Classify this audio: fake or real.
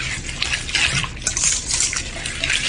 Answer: real